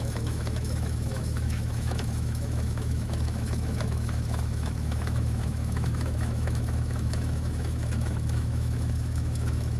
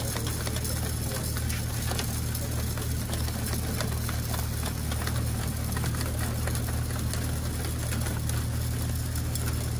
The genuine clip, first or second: second